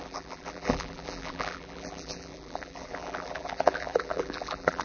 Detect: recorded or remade remade